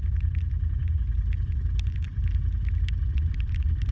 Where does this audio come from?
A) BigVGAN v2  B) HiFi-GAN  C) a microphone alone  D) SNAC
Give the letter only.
C